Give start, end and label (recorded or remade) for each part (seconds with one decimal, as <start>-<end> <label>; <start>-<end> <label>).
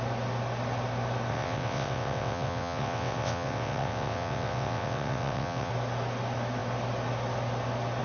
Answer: 0.0-1.3 recorded; 1.3-5.7 remade; 5.7-8.0 recorded